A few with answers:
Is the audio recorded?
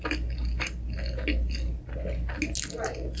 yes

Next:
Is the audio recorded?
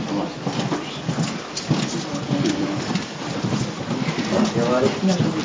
yes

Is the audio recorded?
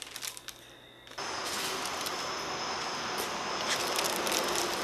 yes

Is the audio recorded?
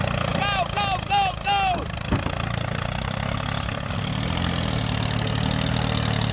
yes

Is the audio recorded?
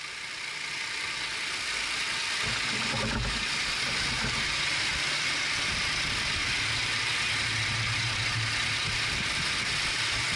yes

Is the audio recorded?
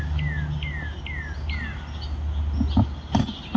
yes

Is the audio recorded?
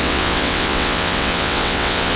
no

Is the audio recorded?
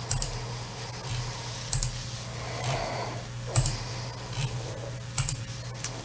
yes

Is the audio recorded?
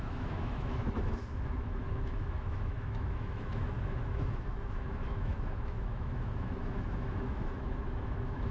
no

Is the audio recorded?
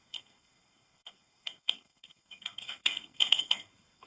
no